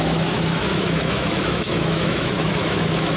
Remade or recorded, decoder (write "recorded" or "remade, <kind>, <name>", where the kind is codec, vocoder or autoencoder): remade, autoencoder, DAC-VAE